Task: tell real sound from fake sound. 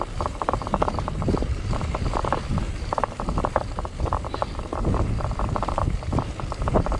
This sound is fake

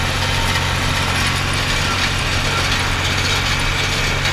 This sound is real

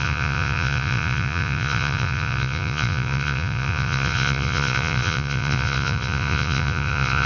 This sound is fake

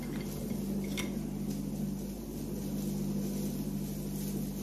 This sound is real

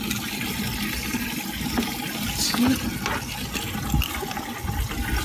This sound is real